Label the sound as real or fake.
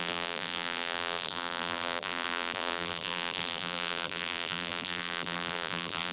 fake